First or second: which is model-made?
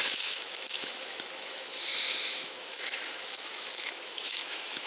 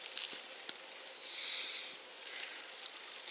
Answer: first